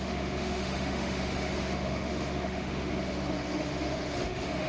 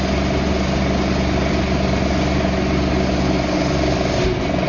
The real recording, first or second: second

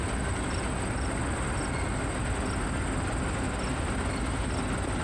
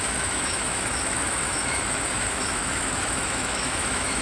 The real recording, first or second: first